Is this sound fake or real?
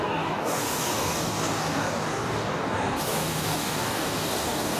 fake